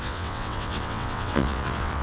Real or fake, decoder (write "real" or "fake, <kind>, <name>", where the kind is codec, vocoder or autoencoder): fake, vocoder, WaveNeXt